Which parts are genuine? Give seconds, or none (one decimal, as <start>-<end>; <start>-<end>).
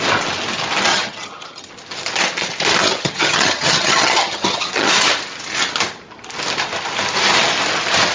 0.0-0.9; 1.7-2.8; 4.9-8.1